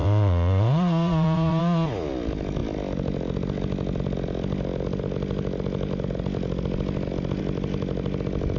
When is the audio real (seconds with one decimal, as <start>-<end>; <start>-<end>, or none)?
1.6-8.6

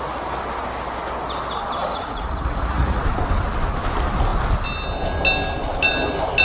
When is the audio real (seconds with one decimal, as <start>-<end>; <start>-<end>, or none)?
0.0-1.8; 3.0-6.4

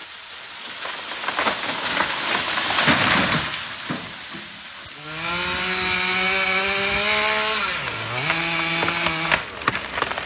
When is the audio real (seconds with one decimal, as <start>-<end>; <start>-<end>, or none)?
1.0-10.3

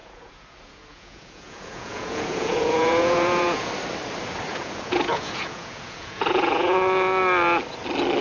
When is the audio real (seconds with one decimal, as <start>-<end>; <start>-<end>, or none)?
3.7-4.5; 7.2-8.2

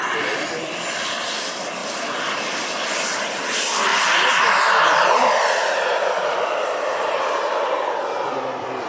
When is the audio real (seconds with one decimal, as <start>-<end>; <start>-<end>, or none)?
0.0-8.9

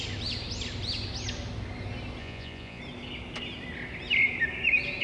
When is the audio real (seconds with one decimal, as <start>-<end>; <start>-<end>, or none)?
0.0-2.2; 2.8-5.0

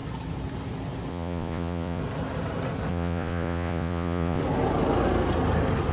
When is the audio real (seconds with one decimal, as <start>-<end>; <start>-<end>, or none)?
0.0-1.1; 2.0-2.9; 4.4-5.9